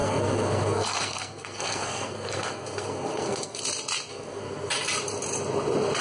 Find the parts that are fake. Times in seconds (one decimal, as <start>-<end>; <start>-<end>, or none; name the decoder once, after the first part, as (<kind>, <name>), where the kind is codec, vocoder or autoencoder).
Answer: 0.0-3.6 (codec, SNAC); 4.1-4.7

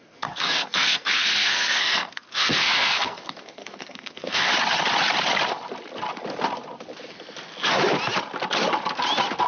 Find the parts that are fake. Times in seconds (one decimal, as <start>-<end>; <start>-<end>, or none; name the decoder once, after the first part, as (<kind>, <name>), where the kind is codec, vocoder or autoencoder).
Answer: 0.0-4.5 (codec, SNAC)

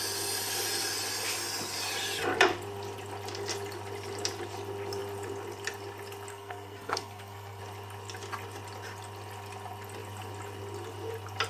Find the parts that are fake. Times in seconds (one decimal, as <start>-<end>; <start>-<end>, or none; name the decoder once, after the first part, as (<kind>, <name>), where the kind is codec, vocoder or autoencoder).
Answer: 6.3-7.6 (codec, SNAC)

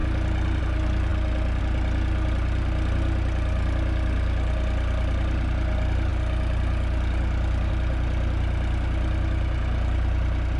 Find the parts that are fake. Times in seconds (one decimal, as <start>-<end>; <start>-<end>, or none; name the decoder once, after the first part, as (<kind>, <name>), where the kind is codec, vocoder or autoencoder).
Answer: none

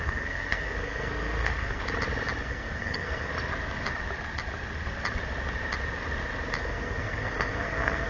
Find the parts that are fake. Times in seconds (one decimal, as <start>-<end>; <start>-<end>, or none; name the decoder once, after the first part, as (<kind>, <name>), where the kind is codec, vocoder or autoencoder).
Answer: 0.0-1.8 (codec, SNAC); 2.4-3.3; 6.6-8.1

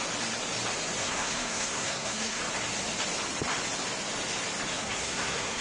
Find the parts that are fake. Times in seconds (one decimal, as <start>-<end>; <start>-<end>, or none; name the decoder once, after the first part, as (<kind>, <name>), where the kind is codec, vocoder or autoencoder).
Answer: 1.0-2.4 (codec, SNAC); 4.7-5.6

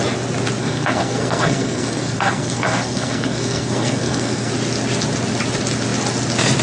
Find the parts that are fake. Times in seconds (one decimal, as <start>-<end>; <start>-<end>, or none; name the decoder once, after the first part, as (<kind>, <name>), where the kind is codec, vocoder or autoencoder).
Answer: 0.6-4.5 (codec, SNAC)